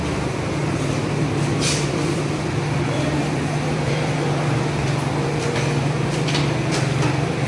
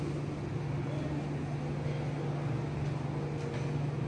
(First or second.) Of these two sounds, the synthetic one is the first